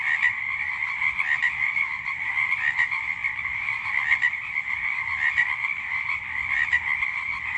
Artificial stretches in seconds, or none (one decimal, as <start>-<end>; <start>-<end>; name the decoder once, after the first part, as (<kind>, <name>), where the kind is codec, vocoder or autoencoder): none